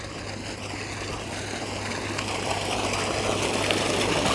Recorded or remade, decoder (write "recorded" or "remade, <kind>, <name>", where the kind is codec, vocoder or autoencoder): recorded